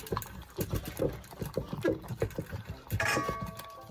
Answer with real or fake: real